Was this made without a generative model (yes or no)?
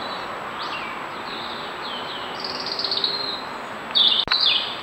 yes